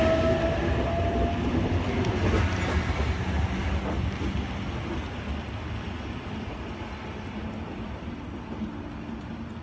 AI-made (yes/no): no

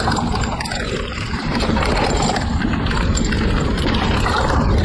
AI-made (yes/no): yes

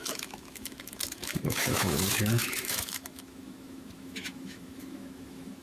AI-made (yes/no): yes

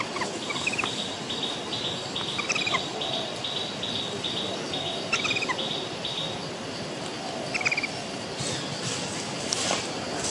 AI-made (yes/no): no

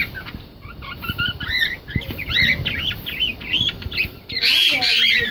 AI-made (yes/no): no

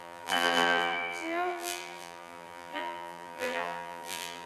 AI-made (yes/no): yes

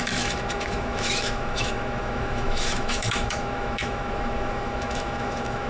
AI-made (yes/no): yes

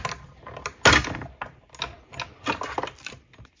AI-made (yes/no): no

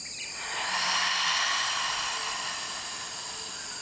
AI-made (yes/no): no